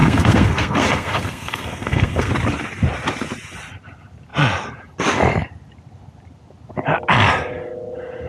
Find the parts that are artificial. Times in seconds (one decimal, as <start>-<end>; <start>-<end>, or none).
0.0-2.3